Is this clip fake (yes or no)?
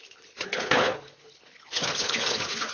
yes